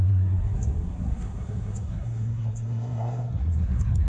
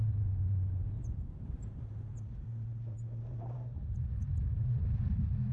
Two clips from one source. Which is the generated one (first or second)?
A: first